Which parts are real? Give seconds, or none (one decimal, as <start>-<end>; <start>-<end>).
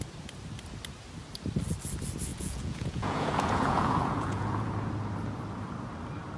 0.0-2.3; 4.7-6.4